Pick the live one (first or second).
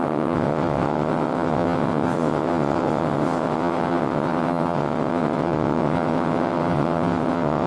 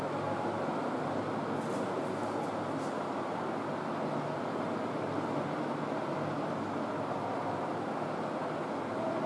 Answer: second